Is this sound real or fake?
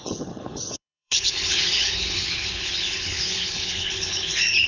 fake